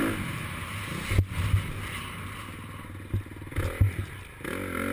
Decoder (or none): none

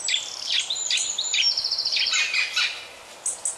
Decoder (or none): none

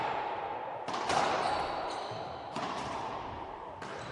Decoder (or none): vocoder, BigVGAN v2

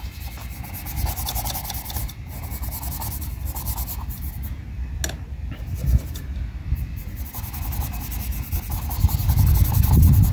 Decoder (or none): none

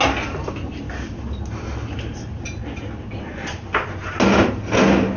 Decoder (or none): none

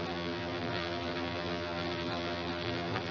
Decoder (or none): vocoder, BigVGAN v2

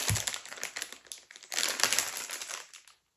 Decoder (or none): none